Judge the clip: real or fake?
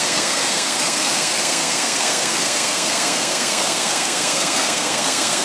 fake